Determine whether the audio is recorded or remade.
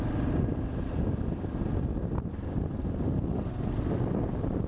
recorded